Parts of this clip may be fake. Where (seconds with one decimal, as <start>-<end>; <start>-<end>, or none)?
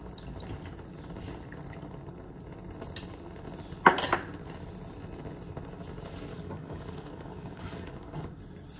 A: 6.3-8.4